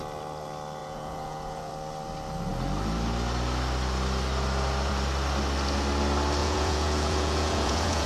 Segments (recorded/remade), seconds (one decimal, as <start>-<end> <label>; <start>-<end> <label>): 0.0-0.8 recorded; 0.8-1.7 remade; 1.7-6.4 recorded; 6.4-8.1 remade